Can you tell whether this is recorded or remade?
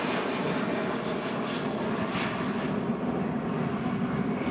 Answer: recorded